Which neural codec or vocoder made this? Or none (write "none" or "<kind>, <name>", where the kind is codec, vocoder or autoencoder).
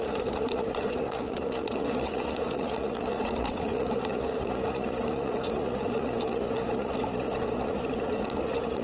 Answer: vocoder, Vocos